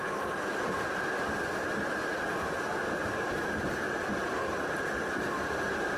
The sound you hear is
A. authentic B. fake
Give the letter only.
B